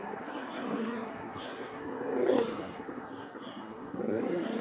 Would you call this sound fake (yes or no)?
yes